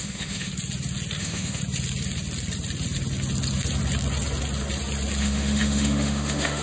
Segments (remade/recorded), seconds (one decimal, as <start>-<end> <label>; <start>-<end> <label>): 0.0-0.5 remade; 0.5-1.2 recorded; 1.2-1.6 remade; 1.6-5.2 recorded; 5.2-6.6 remade